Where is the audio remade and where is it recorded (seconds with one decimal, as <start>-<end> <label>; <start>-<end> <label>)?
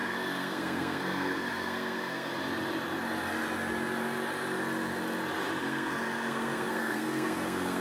0.0-2.3 remade; 2.3-5.6 recorded; 5.6-7.8 remade